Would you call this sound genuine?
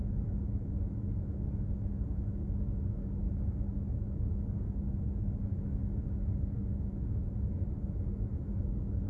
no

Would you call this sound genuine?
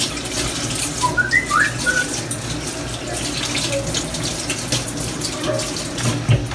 yes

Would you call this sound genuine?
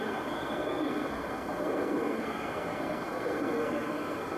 no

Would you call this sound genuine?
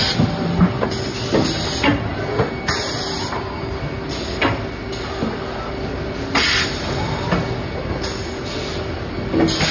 yes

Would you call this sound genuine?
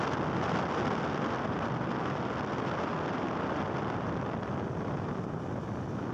yes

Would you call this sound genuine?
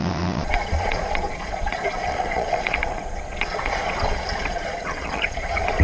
no